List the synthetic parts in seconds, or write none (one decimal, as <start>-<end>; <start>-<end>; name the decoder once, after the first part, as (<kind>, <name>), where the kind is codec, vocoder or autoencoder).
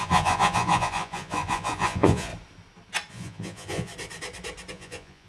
0.0-2.3 (vocoder, Vocos); 3.1-3.9; 4.7-5.3